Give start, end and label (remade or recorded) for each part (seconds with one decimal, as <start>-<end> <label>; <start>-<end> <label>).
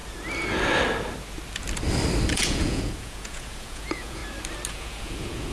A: 0.0-2.3 recorded; 2.3-4.2 remade; 4.2-4.7 recorded; 4.7-5.5 remade